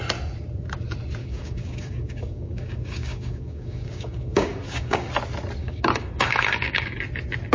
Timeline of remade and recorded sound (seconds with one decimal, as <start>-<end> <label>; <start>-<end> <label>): 0.0-1.2 recorded; 1.2-5.1 remade; 5.1-5.6 recorded; 5.6-7.0 remade; 7.0-7.5 recorded